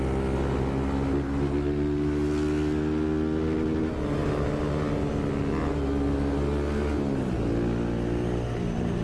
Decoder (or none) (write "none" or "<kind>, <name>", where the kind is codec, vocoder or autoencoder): none